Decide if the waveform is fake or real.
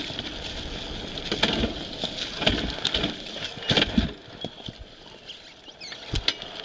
real